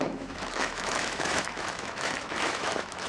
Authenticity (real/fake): fake